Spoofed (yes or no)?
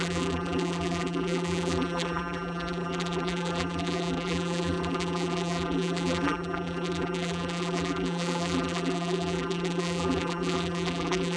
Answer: yes